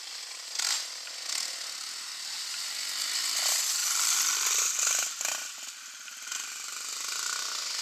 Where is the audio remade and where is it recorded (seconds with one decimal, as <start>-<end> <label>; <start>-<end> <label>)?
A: 0.0-7.8 recorded